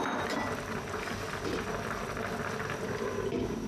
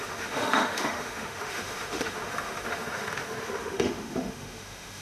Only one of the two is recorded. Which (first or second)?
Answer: first